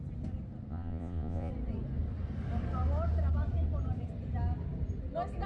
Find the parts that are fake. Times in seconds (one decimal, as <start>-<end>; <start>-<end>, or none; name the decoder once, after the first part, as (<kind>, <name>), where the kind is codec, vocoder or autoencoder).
0.7-1.5 (vocoder, Vocos)